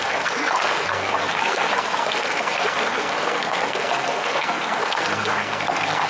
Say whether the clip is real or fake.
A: fake